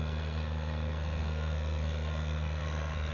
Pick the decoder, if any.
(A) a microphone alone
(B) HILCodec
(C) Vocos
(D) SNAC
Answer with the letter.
D